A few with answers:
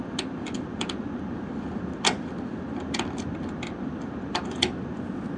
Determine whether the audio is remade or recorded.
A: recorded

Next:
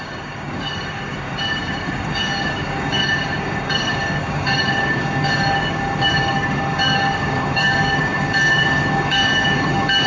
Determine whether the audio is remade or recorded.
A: remade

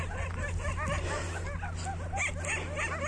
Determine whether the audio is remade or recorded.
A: recorded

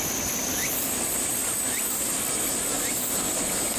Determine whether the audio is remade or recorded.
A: recorded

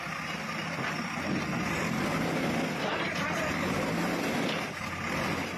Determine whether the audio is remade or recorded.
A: recorded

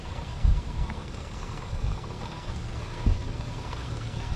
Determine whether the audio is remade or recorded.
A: remade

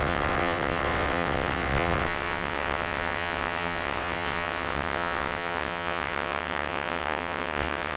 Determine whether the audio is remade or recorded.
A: remade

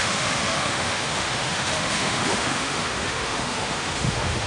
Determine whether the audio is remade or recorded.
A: remade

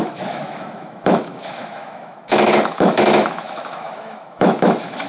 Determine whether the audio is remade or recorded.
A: remade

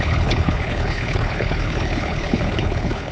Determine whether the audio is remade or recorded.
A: remade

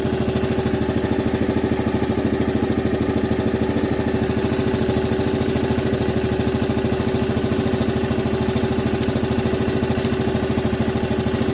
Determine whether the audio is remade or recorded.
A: recorded